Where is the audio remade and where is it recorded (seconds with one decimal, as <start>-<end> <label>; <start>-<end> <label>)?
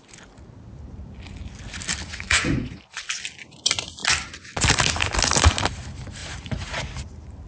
0.0-2.1 recorded; 2.1-2.8 remade; 2.8-6.2 recorded; 6.2-6.8 remade; 6.8-7.5 recorded